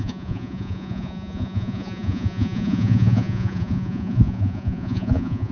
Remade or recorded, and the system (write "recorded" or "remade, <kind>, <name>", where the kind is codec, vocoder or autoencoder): remade, vocoder, Vocos